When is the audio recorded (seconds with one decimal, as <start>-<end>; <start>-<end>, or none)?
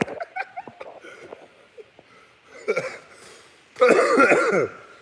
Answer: 1.3-4.3